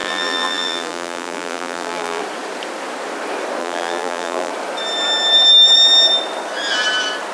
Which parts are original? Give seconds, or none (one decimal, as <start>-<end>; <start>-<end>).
2.2-3.6; 4.5-7.3